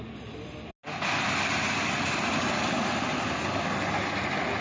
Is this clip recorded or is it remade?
recorded